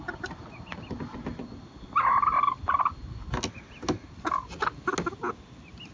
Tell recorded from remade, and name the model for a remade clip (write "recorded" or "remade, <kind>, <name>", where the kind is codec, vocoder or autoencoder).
recorded